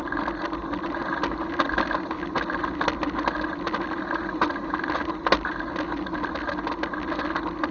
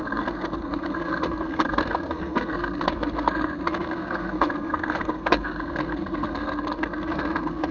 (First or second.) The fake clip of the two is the second